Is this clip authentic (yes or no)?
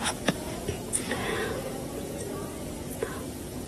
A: no